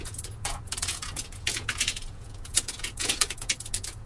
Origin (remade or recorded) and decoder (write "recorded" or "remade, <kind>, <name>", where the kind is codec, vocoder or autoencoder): remade, vocoder, Vocos